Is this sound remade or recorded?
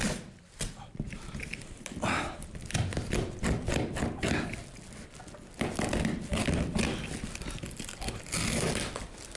recorded